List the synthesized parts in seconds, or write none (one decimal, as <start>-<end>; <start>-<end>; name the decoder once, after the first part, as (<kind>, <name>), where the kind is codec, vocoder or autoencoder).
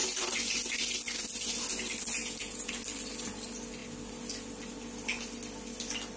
2.2-2.7 (vocoder, Vocos)